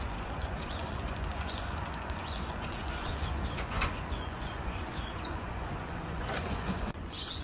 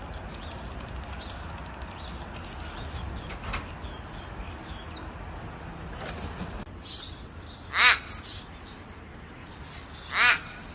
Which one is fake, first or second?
first